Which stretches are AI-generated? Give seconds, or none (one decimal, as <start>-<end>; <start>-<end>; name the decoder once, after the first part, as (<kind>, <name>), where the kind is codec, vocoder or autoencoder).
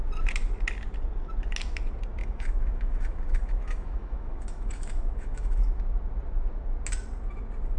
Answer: 2.2-5.8 (autoencoder, DAC-VAE)